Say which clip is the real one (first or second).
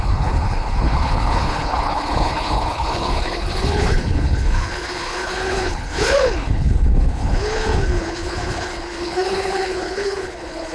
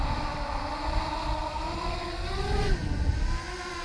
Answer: second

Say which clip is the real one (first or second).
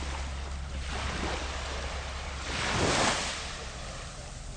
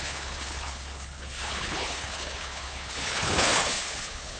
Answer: first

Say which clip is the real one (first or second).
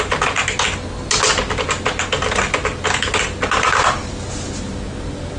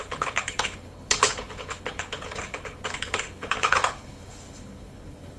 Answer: first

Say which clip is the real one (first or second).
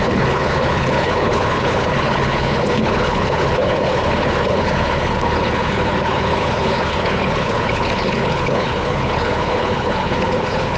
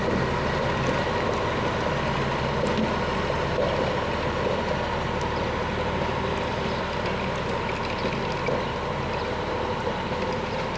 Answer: second